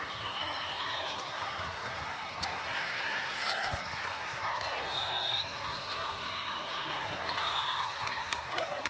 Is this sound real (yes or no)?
no